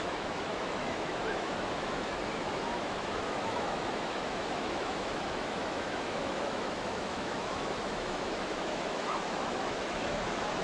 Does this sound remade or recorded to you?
remade